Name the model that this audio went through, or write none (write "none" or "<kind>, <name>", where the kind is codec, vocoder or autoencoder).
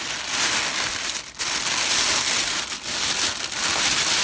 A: none